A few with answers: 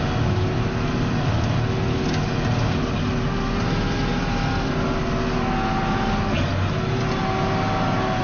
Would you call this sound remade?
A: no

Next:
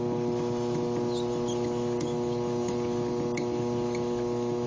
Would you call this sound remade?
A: no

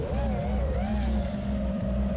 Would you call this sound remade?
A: yes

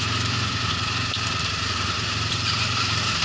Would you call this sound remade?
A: yes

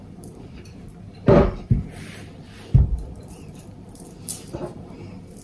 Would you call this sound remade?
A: yes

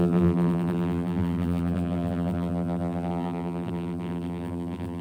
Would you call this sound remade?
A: yes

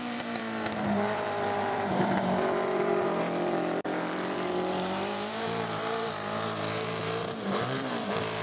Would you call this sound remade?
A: yes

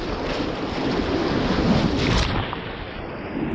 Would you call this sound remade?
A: no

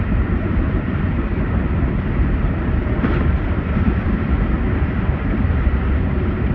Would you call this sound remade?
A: yes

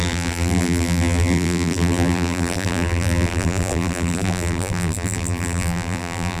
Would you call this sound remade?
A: yes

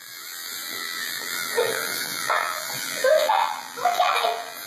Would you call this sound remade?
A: yes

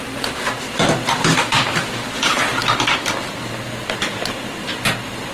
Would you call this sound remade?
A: yes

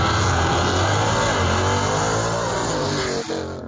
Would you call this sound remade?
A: no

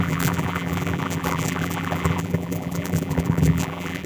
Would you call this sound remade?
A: yes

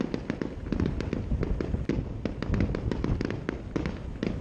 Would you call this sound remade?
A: no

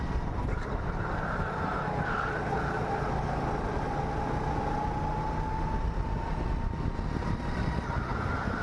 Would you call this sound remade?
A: no